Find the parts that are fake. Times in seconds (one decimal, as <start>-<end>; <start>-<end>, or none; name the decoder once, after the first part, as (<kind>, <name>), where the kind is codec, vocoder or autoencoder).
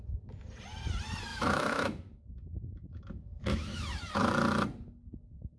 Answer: 1.3-4.3 (autoencoder, DAC-VAE)